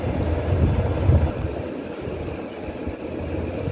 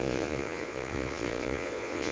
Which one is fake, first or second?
second